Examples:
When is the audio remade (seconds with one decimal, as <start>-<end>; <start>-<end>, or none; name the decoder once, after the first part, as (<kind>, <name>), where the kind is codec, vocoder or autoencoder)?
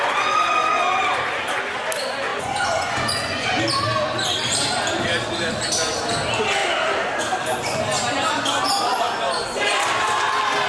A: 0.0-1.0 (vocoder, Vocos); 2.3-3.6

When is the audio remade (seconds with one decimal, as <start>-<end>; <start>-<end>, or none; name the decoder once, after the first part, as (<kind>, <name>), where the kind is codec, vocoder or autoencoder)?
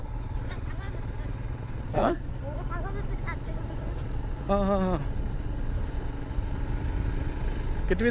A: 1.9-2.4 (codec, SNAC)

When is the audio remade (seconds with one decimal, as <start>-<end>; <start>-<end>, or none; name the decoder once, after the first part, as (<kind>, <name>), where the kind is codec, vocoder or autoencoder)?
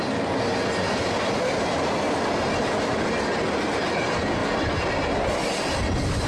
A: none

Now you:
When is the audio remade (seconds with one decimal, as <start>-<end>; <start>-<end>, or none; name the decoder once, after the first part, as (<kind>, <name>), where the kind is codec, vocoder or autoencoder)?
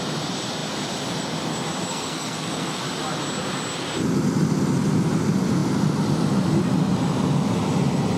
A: 1.9-2.8 (codec, SNAC)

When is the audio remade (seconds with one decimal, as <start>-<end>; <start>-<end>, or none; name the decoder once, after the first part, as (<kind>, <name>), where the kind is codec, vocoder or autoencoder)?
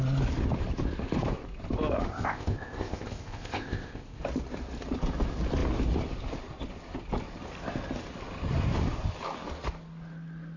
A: 2.1-4.2 (codec, ZipCodec)